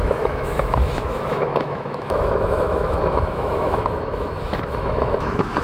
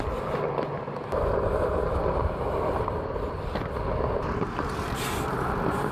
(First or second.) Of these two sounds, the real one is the second